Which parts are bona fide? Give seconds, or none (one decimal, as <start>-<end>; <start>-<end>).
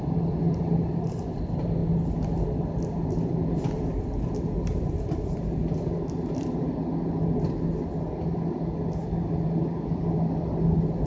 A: 0.0-11.1